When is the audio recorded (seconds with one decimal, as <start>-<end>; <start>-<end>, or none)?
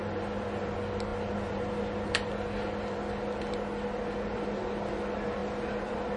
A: 0.0-6.2